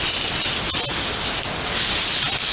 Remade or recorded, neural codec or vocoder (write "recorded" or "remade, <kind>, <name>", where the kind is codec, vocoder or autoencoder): recorded